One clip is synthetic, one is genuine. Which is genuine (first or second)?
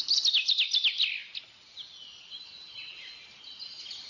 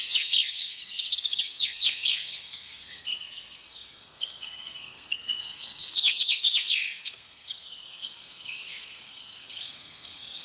first